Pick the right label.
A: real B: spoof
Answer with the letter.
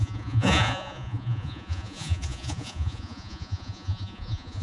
B